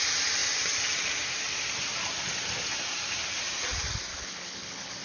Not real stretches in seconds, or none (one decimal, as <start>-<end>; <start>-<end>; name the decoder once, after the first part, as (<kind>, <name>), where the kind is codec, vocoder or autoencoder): 4.1-5.0 (codec, HILCodec)